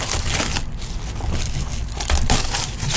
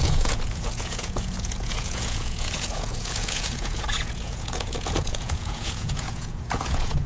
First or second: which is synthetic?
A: second